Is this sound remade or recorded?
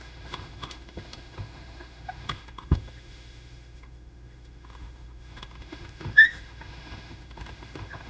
remade